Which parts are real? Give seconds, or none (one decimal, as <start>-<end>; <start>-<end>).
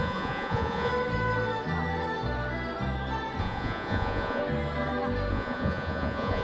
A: 0.9-3.4; 4.4-5.3